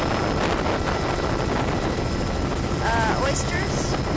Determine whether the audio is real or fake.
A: real